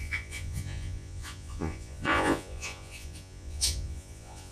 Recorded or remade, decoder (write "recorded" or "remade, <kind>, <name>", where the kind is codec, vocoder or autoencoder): remade, vocoder, Vocos